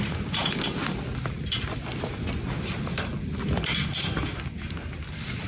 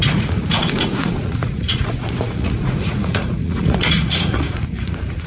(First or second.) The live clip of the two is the first